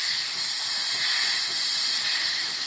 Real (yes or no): no